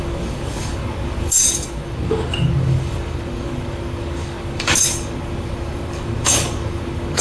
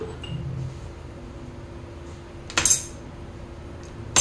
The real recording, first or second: second